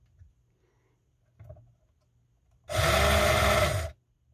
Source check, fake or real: real